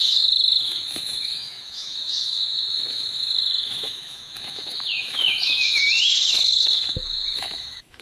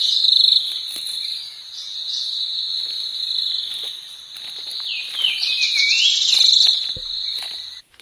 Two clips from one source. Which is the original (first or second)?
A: second